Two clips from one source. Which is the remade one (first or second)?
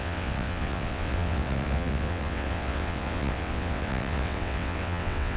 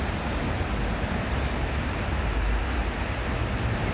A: first